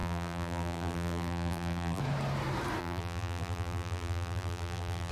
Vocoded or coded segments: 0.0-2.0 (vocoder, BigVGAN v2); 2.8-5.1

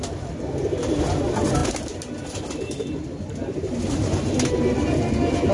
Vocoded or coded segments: none

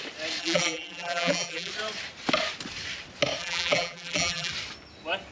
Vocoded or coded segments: 0.4-1.7 (vocoder, BigVGAN v2); 3.4-4.5

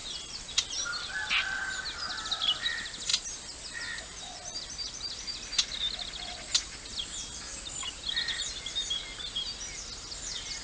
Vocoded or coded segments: none

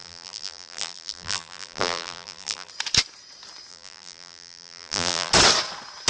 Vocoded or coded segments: 0.0-2.7 (vocoder, BigVGAN v2); 3.7-5.3

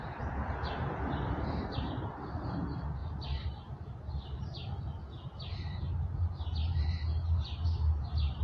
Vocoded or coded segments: 0.0-8.4 (vocoder, BigVGAN v2)

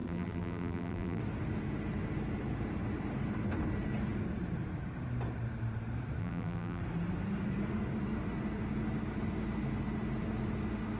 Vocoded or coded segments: 0.0-1.2 (vocoder, BigVGAN v2); 6.2-6.8